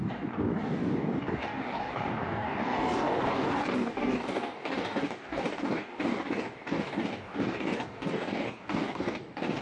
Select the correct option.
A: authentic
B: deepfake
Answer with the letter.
B